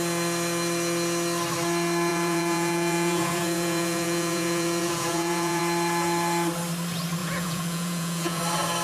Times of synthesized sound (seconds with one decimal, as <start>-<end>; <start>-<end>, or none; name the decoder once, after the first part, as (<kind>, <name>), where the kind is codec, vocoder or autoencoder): 2.1-5.6 (vocoder, Vocos); 7.2-8.4

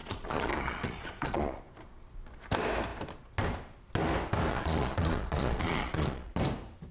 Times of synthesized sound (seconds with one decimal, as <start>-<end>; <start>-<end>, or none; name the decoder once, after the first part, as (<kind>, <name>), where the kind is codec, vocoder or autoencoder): 0.0-1.6 (vocoder, Vocos); 4.5-6.4

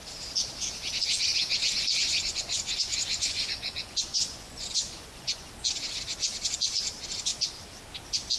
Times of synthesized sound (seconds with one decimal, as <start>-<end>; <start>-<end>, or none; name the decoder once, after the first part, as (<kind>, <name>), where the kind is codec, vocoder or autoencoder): 2.0-5.5 (vocoder, Vocos)

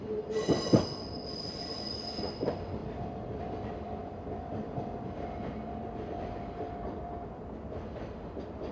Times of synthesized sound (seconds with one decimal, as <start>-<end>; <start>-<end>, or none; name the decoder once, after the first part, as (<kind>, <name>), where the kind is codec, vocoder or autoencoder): none

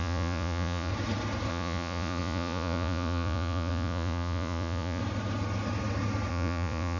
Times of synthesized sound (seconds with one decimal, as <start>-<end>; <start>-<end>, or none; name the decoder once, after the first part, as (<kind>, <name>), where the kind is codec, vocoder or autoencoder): 0.0-0.9 (vocoder, Vocos); 1.5-5.0; 6.3-7.0

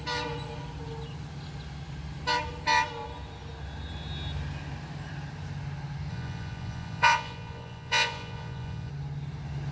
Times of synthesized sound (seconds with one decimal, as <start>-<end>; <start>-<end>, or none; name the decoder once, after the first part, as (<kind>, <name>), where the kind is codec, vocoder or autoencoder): 6.1-8.9 (vocoder, Vocos)